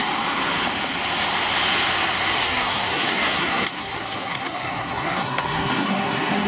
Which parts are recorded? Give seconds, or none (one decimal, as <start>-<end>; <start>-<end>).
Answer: 0.0-2.4